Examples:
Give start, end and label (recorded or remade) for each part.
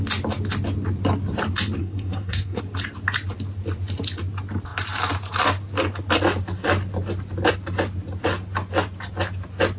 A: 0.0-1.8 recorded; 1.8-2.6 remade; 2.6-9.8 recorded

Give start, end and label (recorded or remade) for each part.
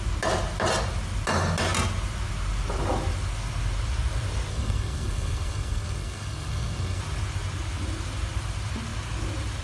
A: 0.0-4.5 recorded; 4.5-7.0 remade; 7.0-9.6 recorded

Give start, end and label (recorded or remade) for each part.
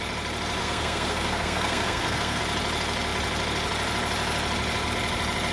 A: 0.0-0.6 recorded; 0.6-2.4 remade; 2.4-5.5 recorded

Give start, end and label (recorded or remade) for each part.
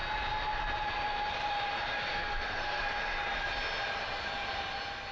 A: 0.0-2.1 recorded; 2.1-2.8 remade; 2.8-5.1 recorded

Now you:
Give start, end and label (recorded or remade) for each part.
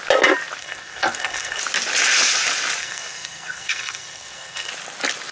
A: 0.0-0.6 recorded; 0.6-1.6 remade; 1.6-2.8 recorded; 2.8-4.7 remade; 4.7-5.3 recorded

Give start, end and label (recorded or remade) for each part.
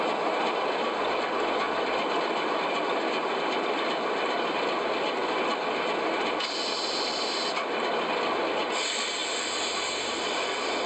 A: 0.0-10.9 recorded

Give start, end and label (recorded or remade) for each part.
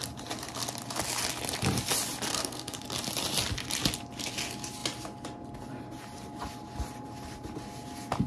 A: 0.0-2.3 recorded; 2.3-2.8 remade; 2.8-8.3 recorded